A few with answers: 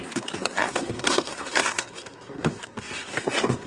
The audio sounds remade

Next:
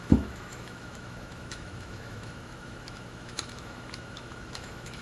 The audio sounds remade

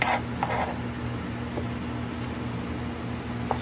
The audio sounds recorded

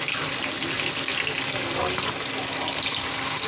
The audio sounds recorded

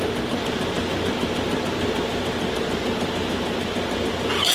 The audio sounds recorded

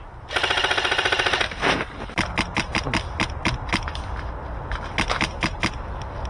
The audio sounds recorded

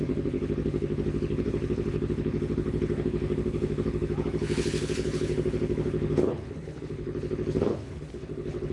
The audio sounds remade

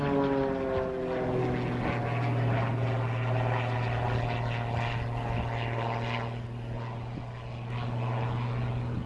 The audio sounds recorded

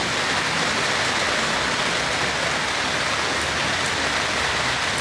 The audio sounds recorded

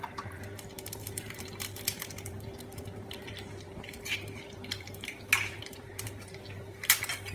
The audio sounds remade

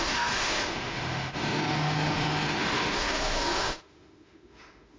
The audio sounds remade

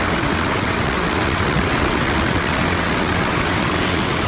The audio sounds remade